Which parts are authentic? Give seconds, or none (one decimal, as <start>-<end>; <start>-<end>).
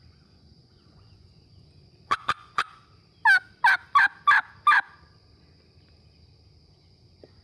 2.8-6.7